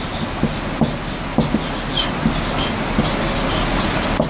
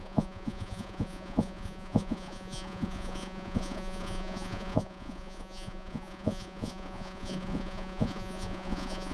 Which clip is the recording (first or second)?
first